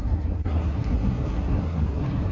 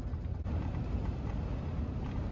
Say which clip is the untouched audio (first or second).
second